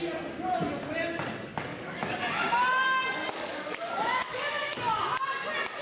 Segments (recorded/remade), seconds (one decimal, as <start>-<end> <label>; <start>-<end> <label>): 0.0-1.7 recorded; 1.7-5.0 remade; 5.0-5.8 recorded